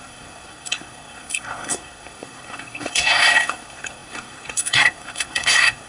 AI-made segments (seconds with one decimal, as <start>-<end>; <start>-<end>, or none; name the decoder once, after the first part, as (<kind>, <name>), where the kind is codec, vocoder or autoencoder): 0.0-5.9 (codec, SNAC)